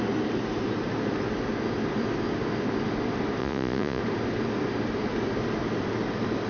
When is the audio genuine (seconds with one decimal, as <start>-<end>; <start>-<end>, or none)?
0.0-3.4; 4.0-6.5